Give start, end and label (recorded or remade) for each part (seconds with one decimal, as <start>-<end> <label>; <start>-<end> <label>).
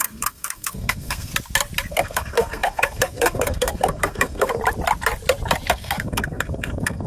0.0-1.3 remade; 1.3-1.9 recorded; 1.9-4.6 remade; 4.6-5.7 recorded; 5.7-7.1 remade